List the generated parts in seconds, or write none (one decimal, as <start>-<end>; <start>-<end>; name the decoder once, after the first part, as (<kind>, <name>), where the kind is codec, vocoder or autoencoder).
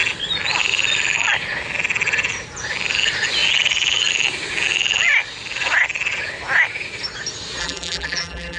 7.6-8.6 (vocoder, BigVGAN v2)